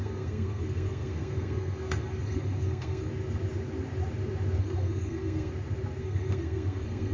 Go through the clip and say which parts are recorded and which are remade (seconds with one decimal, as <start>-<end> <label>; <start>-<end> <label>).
0.0-3.1 remade; 3.1-4.6 recorded; 4.6-5.5 remade; 5.5-6.0 recorded; 6.0-7.1 remade